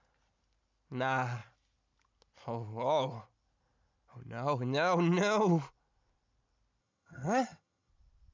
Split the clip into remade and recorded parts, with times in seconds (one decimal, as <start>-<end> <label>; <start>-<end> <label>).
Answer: 0.0-6.8 recorded; 6.8-7.9 remade; 7.9-8.3 recorded